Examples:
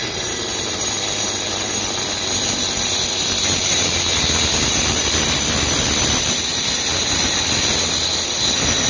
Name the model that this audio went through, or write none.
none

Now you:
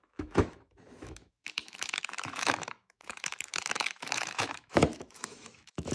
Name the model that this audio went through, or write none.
autoencoder, DAC-VAE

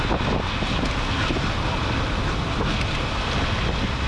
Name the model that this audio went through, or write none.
none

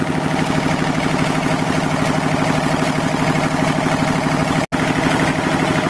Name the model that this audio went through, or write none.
none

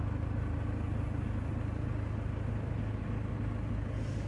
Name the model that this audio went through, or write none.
none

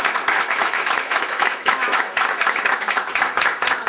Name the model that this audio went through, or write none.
autoencoder, DAC-VAE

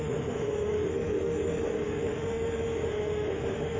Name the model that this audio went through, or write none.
autoencoder, DAC-VAE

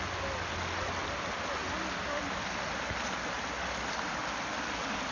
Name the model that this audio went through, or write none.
none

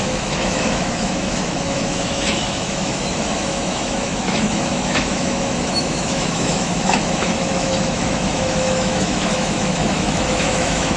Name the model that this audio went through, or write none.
autoencoder, DAC-VAE